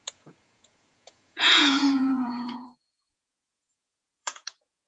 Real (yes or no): no